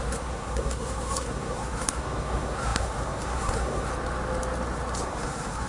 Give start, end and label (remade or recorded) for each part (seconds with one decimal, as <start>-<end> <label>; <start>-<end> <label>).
0.0-3.9 remade; 3.9-5.0 recorded; 5.0-5.7 remade